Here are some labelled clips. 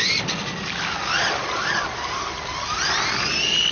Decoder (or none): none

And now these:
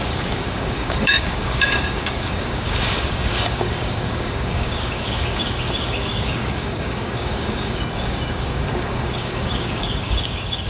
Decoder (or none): codec, DAC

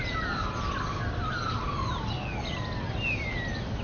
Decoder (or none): none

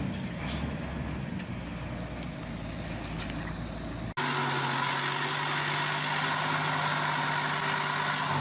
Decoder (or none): none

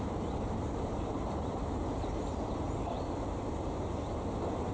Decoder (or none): none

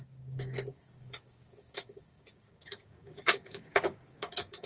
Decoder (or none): codec, DAC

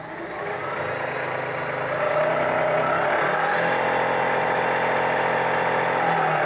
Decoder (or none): none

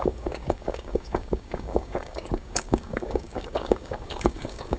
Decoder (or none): codec, DAC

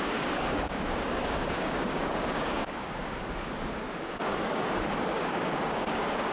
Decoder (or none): codec, DAC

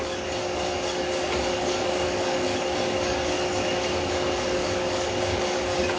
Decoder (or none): codec, DAC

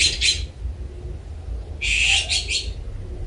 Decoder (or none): none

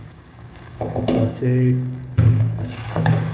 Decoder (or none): codec, DAC